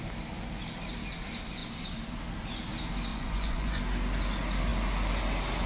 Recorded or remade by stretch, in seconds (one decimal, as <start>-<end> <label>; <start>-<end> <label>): 0.0-3.1 recorded; 3.1-3.8 remade; 3.8-5.7 recorded